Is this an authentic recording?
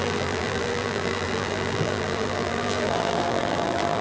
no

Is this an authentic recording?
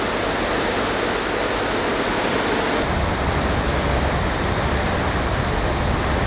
yes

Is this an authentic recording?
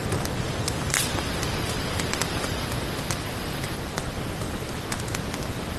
no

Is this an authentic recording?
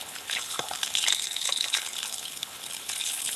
no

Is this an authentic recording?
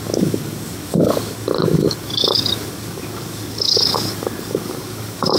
no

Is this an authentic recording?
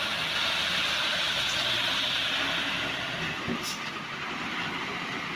yes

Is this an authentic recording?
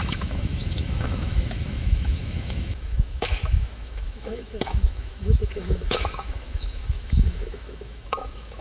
no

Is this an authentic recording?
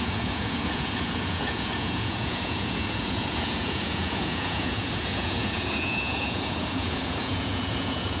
no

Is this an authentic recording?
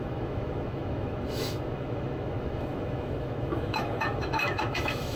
no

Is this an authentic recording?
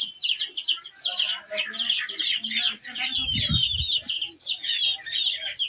yes